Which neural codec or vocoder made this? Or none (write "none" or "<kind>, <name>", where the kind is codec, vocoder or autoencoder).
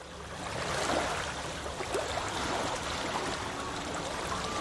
none